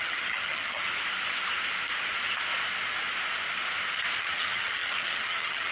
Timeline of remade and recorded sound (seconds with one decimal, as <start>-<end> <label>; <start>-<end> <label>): 0.0-0.9 remade; 0.9-4.2 recorded; 4.2-5.7 remade